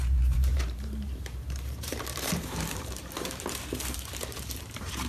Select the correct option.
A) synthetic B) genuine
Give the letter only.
A